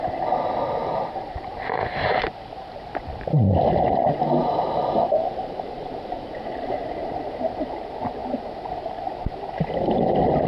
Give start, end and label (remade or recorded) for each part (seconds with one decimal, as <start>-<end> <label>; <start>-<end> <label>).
0.0-0.8 recorded; 0.8-1.4 remade; 1.4-4.4 recorded; 4.4-7.2 remade; 7.2-10.5 recorded

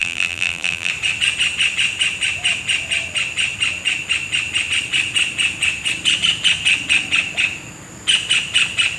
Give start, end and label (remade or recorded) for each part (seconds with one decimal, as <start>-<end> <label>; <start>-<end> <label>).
0.0-0.9 remade; 0.9-9.0 recorded

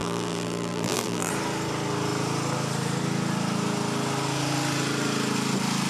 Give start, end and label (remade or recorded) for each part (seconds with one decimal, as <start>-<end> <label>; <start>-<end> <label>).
0.0-1.3 remade; 1.3-5.9 recorded

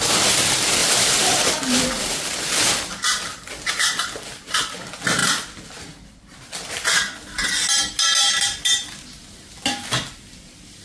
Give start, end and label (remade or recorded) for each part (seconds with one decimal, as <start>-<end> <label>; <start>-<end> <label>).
0.0-0.8 recorded; 0.8-3.8 remade; 3.8-10.8 recorded